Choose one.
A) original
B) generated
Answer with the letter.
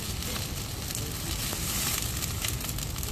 A